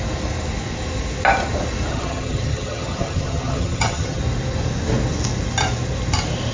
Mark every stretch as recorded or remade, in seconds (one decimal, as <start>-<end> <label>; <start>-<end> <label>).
0.0-1.9 recorded; 1.9-4.2 remade; 4.2-6.5 recorded